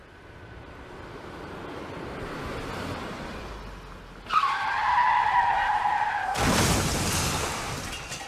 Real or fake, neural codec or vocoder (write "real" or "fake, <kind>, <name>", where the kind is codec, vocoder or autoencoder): real